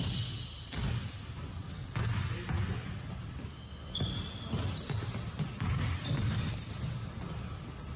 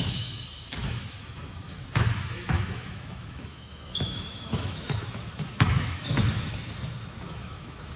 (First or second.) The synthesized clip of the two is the second